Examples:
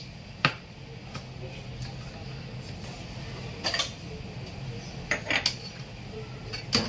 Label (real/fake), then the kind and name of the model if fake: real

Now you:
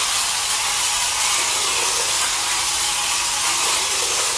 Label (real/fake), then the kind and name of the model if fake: real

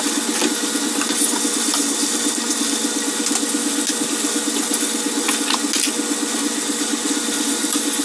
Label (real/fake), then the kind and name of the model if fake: real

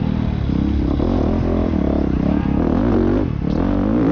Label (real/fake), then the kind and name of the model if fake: real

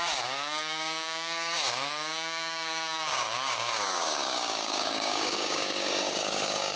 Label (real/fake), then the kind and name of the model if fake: fake, codec, DAC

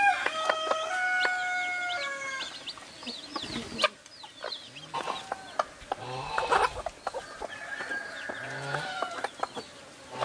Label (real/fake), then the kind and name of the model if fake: real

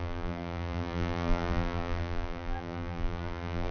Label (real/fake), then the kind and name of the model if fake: fake, vocoder, BigVGAN v2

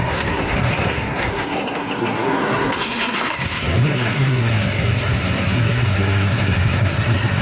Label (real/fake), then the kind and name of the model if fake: fake, codec, SNAC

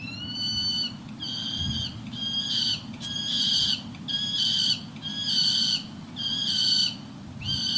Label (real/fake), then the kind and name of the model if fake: real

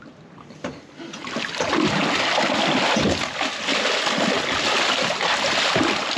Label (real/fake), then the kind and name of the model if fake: real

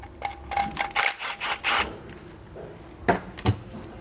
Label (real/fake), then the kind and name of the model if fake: real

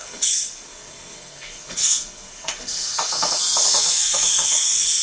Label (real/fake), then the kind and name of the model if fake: fake, codec, SNAC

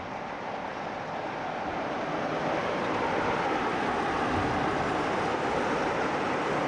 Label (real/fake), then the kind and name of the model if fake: real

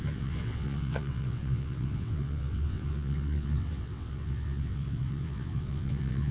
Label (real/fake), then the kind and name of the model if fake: fake, vocoder, WaveNeXt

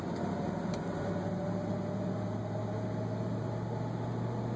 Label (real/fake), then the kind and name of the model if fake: real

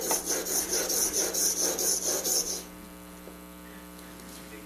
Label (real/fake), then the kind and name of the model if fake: real